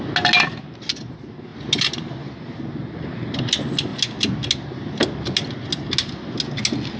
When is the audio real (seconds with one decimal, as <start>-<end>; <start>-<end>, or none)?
0.0-7.0